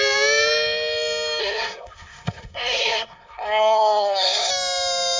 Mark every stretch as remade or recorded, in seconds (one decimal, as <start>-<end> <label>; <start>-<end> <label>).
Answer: 0.0-1.4 recorded; 1.4-4.5 remade; 4.5-5.2 recorded

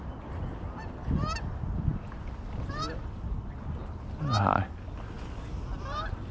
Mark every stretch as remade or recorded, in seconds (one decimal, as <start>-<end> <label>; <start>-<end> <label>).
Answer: 0.0-1.9 recorded; 1.9-3.5 remade; 3.5-6.3 recorded